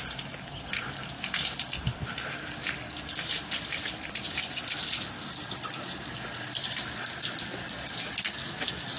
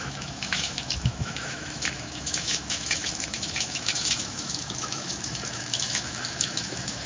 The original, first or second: first